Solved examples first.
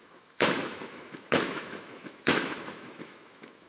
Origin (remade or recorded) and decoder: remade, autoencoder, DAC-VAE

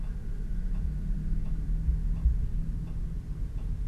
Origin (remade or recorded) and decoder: recorded